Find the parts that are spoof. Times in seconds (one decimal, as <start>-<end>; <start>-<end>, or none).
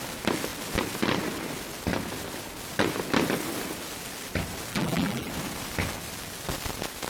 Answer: 4.7-5.3